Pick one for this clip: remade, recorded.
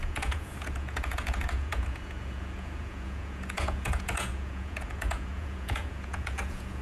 remade